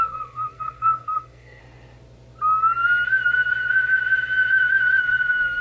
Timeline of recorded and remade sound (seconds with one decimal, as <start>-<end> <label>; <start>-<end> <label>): 0.0-1.6 remade; 1.6-5.0 recorded; 5.0-5.6 remade